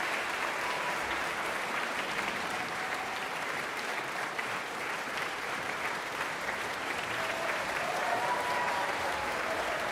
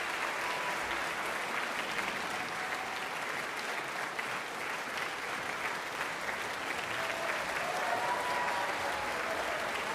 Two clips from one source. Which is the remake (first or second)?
first